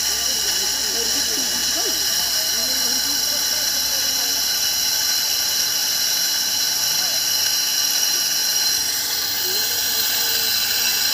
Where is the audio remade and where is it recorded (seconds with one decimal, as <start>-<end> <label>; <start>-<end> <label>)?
0.0-8.4 recorded; 8.4-9.2 remade; 9.2-11.1 recorded